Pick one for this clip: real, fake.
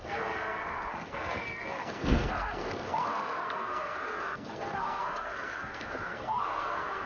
fake